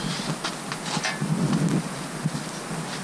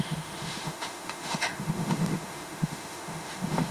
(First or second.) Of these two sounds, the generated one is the second